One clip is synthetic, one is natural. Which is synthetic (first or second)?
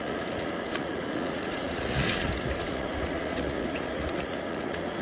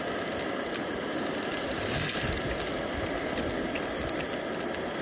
first